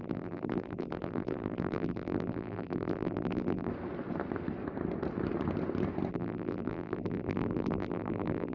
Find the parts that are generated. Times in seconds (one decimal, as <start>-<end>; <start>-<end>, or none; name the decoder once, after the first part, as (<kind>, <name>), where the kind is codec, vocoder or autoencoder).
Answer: 0.0-3.7 (vocoder, BigVGAN v2); 6.1-8.5